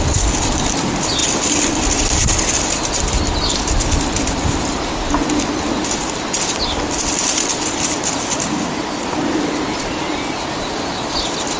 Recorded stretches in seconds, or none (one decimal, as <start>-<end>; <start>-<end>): 0.0-11.6